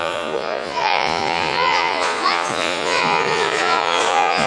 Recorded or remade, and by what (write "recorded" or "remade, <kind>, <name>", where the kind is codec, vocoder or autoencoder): remade, vocoder, Vocos